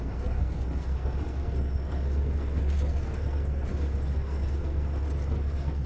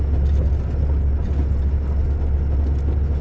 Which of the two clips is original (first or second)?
second